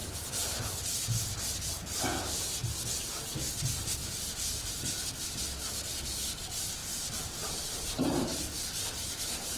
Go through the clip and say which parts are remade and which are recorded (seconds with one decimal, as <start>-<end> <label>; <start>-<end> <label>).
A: 0.0-0.8 remade; 0.8-6.8 recorded; 6.8-9.6 remade